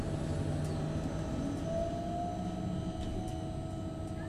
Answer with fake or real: real